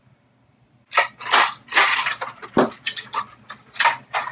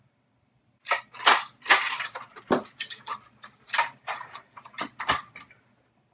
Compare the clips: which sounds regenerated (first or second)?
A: second